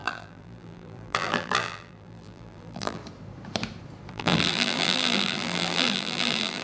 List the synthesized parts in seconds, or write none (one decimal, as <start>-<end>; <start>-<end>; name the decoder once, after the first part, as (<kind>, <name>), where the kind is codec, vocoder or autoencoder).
0.0-3.0 (vocoder, BigVGAN v2); 4.1-6.6